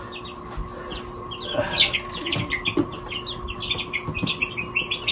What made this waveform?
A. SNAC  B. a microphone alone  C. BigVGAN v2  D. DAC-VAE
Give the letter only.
B